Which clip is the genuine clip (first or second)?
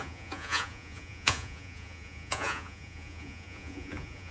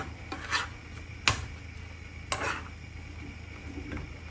second